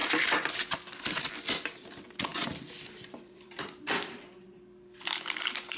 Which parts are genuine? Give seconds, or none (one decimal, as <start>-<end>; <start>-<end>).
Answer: 0.0-2.3; 4.2-5.8